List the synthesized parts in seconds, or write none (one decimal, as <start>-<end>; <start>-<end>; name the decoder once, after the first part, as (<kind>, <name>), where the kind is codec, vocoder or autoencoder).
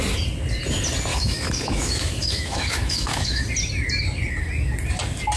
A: 1.1-3.4 (autoencoder, DAC-VAE)